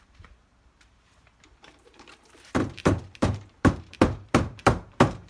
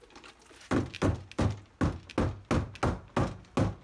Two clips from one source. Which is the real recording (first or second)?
second